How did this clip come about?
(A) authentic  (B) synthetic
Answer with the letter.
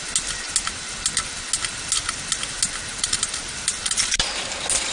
A